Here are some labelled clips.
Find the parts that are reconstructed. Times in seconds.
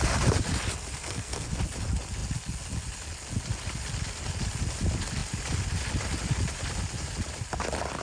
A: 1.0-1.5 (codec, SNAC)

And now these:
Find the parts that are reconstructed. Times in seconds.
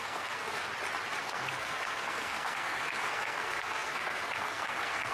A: 0.0-0.7 (codec, SNAC); 1.2-5.1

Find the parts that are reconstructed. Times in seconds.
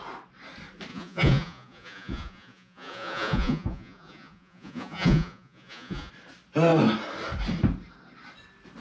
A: 0.9-6.1 (vocoder, Vocos)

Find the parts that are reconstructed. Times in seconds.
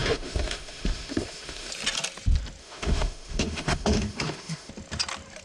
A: 0.0-1.7 (autoencoder, DAC-VAE); 2.6-4.7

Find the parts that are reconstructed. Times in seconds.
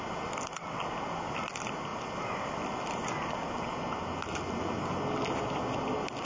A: none